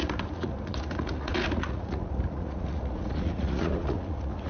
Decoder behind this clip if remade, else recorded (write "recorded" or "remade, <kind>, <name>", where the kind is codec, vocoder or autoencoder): remade, vocoder, Vocos